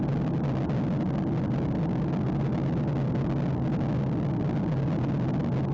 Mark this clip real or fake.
real